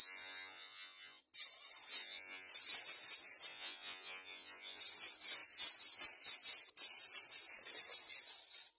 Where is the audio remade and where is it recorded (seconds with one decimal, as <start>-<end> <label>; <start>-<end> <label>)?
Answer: 0.0-1.2 remade; 1.2-2.0 recorded; 2.0-2.5 remade; 2.5-3.5 recorded; 3.5-4.8 remade; 4.8-8.8 recorded